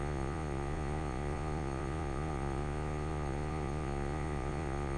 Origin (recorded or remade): remade